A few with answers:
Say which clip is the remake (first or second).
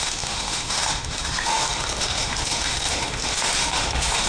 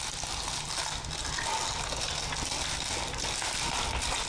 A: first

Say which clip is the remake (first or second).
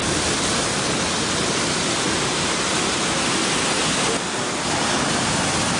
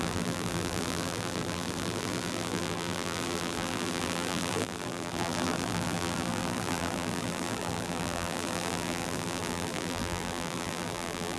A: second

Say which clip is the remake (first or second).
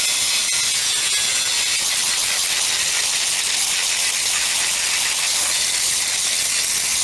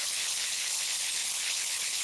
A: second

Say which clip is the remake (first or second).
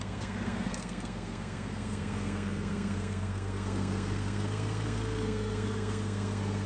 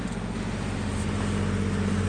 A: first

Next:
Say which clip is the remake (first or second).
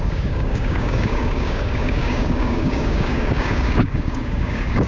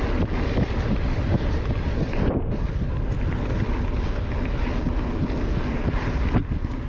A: first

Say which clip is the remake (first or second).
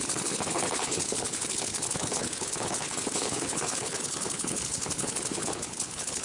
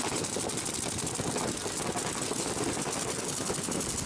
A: first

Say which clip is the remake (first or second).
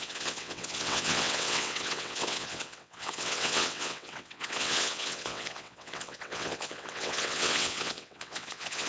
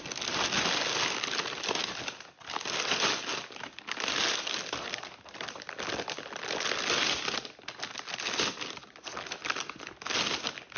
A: first